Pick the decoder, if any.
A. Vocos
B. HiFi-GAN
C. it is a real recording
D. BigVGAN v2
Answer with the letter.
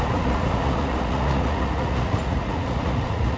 A